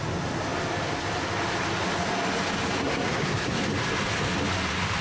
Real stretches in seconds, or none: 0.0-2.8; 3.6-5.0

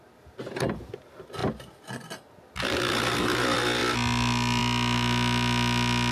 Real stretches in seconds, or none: 0.0-6.1

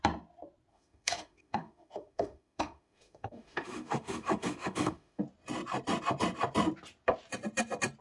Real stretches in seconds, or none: 0.0-0.7; 5.2-8.0

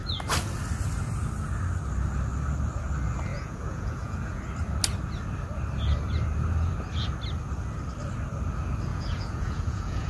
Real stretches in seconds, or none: 0.0-3.3; 4.4-8.9